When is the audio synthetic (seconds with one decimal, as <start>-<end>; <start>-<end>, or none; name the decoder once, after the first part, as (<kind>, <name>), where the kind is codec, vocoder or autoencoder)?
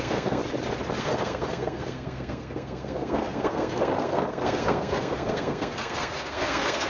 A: 0.0-0.4 (codec, SNAC); 1.0-6.9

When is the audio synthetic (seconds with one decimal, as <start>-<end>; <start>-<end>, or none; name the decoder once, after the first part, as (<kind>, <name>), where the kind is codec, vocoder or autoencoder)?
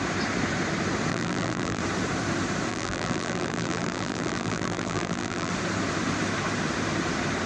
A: 1.1-1.8 (vocoder, BigVGAN v2); 2.7-5.5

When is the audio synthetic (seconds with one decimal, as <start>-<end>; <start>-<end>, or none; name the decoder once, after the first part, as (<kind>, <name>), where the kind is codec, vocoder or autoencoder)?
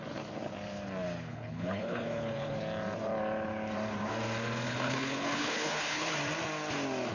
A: 1.3-2.6 (codec, HILCodec); 4.7-6.1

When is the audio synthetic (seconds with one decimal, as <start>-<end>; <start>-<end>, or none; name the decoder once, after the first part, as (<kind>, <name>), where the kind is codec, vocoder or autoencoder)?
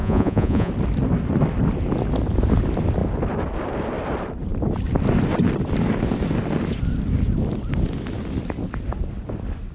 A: 0.0-0.7 (vocoder, Vocos)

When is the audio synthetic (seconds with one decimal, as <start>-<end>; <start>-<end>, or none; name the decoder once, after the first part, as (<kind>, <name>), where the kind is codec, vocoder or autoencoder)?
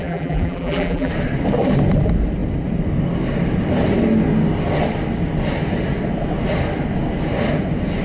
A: 0.0-1.1 (vocoder, BigVGAN v2)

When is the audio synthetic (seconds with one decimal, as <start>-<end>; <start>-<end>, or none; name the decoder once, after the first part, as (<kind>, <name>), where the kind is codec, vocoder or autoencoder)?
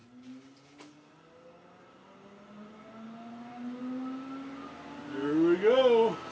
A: none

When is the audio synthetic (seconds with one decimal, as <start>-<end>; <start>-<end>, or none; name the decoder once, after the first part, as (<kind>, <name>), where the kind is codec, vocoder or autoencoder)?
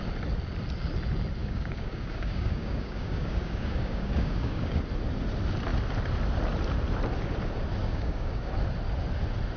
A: 1.4-4.8 (codec, DAC); 7.8-8.5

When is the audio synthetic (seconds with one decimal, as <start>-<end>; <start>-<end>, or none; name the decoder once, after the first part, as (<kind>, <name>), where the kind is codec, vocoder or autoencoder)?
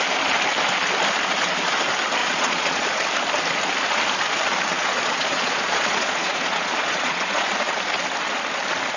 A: 2.2-3.0 (vocoder, Vocos); 4.7-7.5